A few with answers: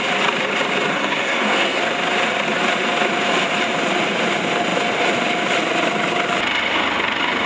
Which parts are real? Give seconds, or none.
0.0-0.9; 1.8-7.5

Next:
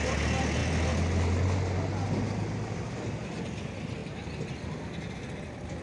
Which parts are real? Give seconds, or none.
0.0-5.8